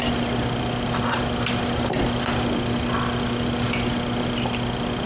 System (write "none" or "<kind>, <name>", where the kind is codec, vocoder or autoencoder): none